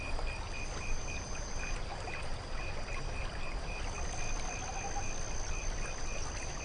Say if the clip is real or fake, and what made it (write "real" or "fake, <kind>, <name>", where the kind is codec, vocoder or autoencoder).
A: real